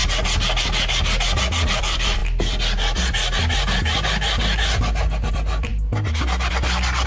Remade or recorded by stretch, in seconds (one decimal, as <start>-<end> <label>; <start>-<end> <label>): 0.0-1.8 recorded; 1.8-2.2 remade; 2.2-5.3 recorded; 5.3-5.7 remade; 5.7-6.5 recorded; 6.5-7.1 remade